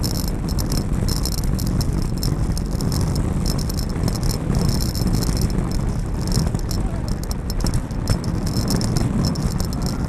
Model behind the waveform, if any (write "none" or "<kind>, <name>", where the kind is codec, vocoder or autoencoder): none